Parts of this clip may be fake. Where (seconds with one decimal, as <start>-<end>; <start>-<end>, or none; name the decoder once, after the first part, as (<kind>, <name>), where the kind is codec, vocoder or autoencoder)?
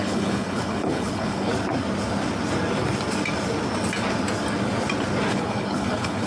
0.0-1.5 (codec, HILCodec); 5.3-6.3